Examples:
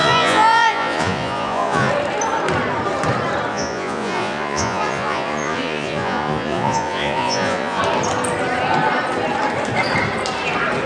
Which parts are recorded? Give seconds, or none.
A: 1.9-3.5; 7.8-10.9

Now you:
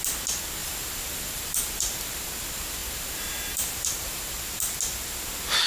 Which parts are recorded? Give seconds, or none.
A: 0.0-0.6; 2.2-2.8; 4.2-5.7

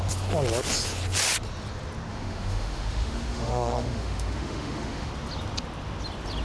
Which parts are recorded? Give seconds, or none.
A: 0.0-2.1; 5.1-6.4

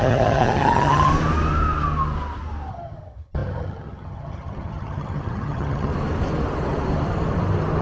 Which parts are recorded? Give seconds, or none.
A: 1.1-2.7; 5.9-7.8